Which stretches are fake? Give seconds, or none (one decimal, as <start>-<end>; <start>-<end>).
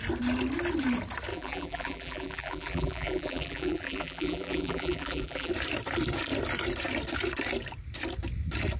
1.3-5.5